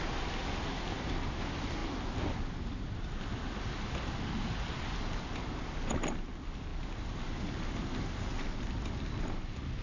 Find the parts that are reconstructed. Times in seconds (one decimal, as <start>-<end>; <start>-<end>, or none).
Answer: 1.8-5.2